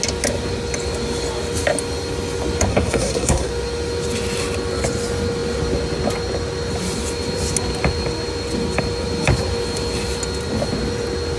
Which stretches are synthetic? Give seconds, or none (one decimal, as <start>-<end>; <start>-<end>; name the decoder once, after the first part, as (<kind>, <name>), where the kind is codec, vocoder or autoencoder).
2.7-3.5 (codec, SNAC)